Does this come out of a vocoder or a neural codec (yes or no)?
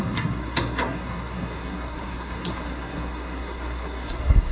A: yes